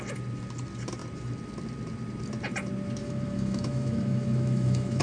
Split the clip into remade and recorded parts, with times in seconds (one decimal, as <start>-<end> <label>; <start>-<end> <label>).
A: 0.0-3.0 recorded; 3.0-5.0 remade